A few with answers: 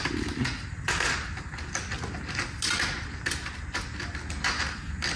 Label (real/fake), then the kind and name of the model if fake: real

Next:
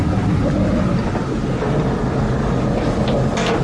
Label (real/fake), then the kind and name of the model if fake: real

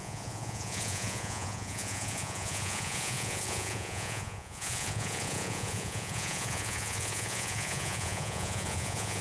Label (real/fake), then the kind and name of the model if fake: fake, vocoder, Vocos